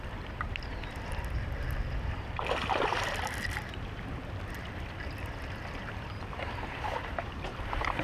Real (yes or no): no